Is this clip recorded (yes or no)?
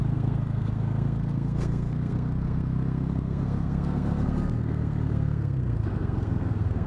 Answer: no